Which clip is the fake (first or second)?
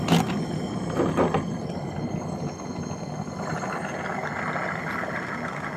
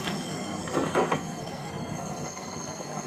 second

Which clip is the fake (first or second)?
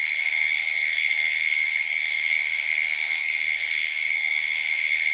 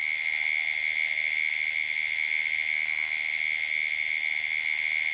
first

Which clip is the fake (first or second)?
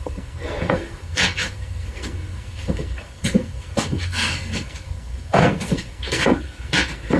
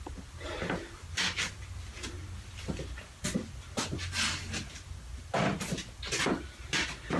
first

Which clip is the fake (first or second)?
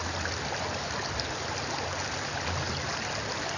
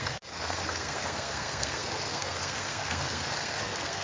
second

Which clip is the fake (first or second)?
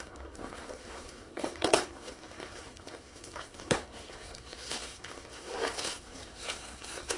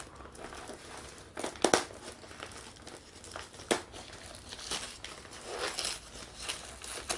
first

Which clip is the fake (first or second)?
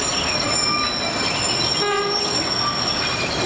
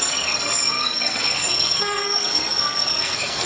second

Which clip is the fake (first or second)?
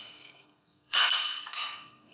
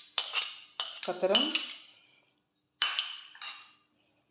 first